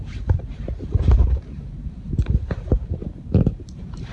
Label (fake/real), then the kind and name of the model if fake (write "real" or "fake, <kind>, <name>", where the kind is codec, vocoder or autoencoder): fake, vocoder, BigVGAN v2